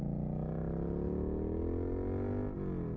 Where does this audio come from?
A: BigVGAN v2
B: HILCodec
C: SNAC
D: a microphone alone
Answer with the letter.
D